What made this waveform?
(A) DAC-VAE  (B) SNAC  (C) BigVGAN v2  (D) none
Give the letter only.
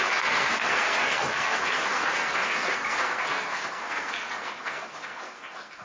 B